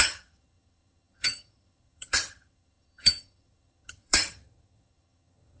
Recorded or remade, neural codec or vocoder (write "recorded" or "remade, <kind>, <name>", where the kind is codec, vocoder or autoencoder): remade, vocoder, HiFi-GAN